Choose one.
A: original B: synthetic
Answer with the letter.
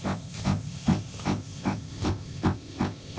B